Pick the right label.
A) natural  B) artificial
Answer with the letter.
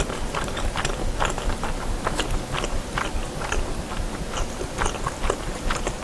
A